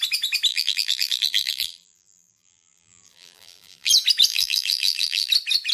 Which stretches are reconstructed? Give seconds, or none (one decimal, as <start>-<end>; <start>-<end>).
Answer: 0.5-3.9; 4.3-5.3